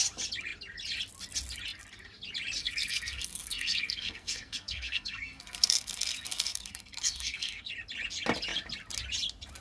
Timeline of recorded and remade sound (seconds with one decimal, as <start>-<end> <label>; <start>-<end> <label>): 0.0-2.6 recorded; 2.6-7.7 remade; 7.7-9.6 recorded